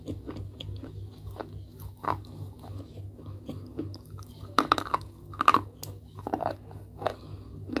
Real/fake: fake